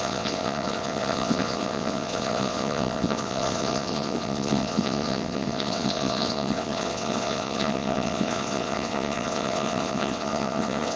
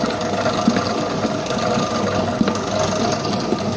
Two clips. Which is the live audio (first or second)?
second